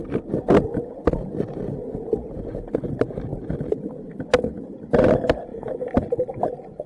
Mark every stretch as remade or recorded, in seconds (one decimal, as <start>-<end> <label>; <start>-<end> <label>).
0.0-6.9 recorded